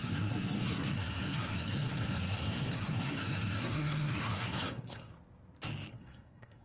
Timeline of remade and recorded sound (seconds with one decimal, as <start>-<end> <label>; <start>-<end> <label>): 0.0-5.1 remade; 5.1-5.9 recorded; 5.9-6.6 remade

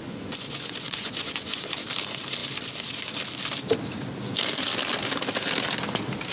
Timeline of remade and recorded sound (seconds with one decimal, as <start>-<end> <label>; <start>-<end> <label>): 0.0-1.7 remade; 1.7-6.3 recorded

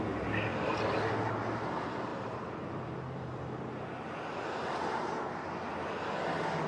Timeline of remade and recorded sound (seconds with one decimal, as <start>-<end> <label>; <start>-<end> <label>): 0.0-2.1 recorded; 2.1-3.7 remade; 3.7-6.7 recorded

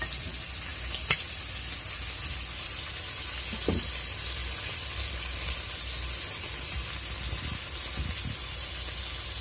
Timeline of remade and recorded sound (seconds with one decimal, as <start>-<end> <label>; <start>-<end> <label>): 0.0-9.4 recorded

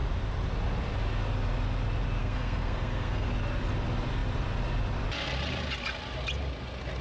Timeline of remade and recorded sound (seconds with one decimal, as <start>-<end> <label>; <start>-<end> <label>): 0.0-2.2 recorded; 2.2-3.3 remade; 3.3-7.0 recorded

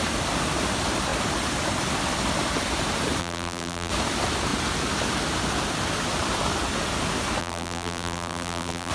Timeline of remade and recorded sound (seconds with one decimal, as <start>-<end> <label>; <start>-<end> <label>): 0.0-3.2 recorded; 3.2-3.9 remade; 3.9-7.4 recorded; 7.4-8.9 remade